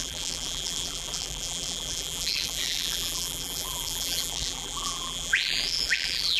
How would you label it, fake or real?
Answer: fake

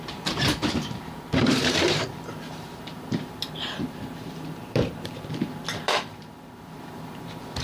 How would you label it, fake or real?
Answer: fake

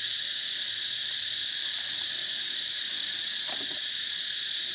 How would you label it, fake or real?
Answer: fake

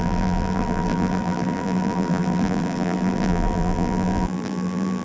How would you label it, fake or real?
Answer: fake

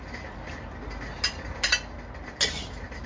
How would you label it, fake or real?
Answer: real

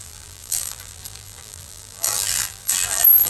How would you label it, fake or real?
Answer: fake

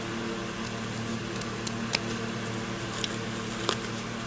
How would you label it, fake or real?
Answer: real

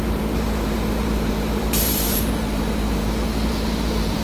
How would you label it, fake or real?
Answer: fake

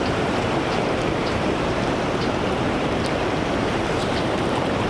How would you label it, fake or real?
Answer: fake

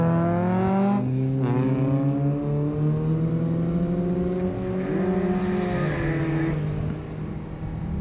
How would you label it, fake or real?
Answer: real